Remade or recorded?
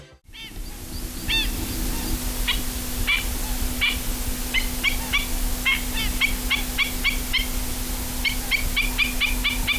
recorded